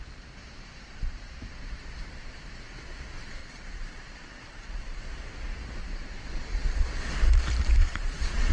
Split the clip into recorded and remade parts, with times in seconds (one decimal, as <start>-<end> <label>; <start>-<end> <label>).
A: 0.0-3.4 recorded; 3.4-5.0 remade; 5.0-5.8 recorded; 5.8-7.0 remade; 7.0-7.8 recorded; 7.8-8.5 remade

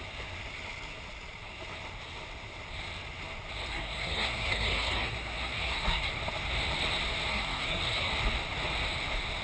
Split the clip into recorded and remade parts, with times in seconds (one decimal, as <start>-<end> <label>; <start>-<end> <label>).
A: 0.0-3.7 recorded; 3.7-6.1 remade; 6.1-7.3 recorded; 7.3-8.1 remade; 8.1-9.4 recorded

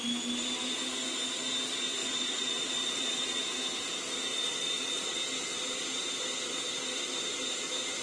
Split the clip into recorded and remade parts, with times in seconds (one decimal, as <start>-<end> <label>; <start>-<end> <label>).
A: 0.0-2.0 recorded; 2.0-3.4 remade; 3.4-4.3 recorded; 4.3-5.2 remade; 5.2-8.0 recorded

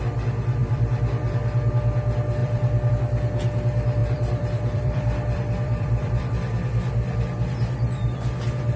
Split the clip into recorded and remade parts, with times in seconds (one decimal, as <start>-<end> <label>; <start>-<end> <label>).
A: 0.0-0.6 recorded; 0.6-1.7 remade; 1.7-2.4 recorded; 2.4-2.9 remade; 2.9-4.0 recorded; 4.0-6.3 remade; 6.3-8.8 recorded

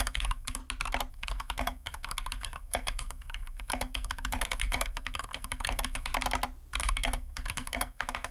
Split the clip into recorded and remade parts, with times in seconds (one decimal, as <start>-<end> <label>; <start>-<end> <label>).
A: 0.0-0.6 remade; 0.6-1.1 recorded; 1.1-6.1 remade; 6.1-6.8 recorded; 6.8-8.3 remade

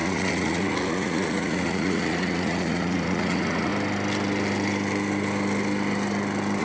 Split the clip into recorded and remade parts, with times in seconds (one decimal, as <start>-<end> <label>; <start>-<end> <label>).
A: 0.0-3.7 remade; 3.7-6.6 recorded

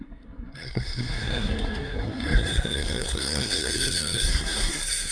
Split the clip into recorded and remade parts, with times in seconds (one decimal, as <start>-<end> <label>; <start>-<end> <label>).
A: 0.0-5.1 remade

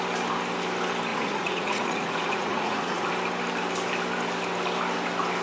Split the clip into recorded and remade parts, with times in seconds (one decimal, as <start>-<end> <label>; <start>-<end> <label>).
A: 0.0-1.1 recorded; 1.1-3.1 remade; 3.1-5.4 recorded